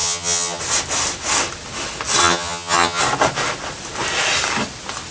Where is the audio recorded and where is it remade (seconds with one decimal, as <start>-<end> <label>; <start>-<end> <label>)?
0.0-0.6 remade; 0.6-2.2 recorded; 2.2-3.0 remade; 3.0-5.1 recorded